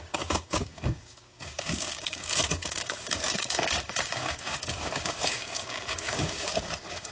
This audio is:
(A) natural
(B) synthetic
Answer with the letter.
B